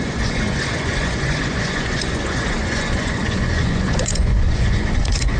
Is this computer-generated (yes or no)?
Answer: yes